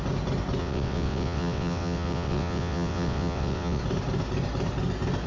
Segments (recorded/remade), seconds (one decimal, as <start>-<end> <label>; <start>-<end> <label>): 0.0-0.6 recorded; 0.6-3.8 remade; 3.8-5.3 recorded